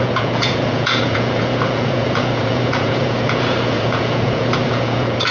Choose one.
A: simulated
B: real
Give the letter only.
A